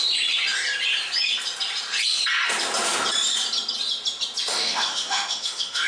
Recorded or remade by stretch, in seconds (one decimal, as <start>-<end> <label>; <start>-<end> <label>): 0.0-4.5 recorded; 4.5-5.9 remade